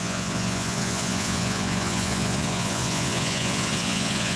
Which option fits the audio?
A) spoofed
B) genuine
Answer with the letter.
A